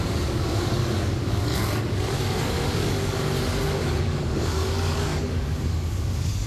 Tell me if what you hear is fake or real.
fake